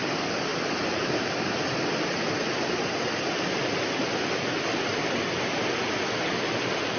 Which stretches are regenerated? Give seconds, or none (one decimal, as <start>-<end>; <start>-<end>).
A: none